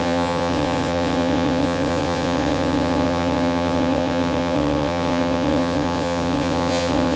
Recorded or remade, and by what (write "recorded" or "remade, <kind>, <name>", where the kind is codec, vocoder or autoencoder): remade, vocoder, WaveNeXt